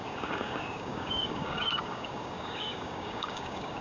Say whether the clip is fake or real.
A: fake